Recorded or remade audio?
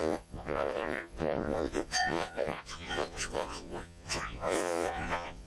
remade